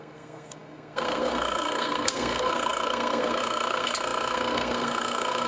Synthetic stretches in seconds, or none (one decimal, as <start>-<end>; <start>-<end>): 0.0-5.5